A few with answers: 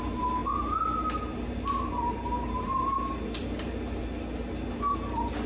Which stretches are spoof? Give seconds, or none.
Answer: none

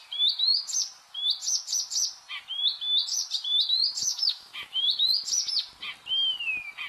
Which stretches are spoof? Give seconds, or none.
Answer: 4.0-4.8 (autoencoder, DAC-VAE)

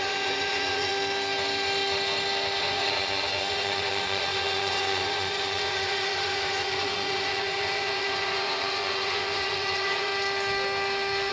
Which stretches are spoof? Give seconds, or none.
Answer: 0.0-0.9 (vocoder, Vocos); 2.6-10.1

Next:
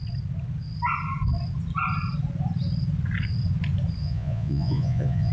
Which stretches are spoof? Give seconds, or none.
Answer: 4.0-5.3 (vocoder, Vocos)